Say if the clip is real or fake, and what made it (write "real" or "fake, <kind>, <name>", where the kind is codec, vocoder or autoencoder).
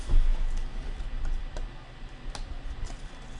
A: real